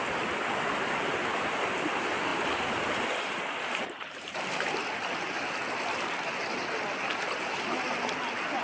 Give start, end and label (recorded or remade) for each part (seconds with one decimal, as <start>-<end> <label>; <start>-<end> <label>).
0.0-2.3 recorded; 2.3-4.7 remade; 4.7-8.6 recorded